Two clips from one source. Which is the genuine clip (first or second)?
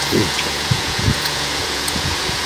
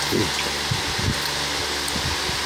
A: second